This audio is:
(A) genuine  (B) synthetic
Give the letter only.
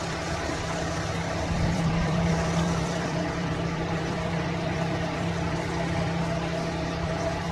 B